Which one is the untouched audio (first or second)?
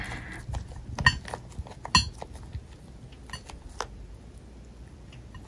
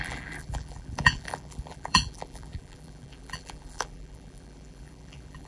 first